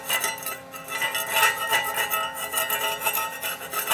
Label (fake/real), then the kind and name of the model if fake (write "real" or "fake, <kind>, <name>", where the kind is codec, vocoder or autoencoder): real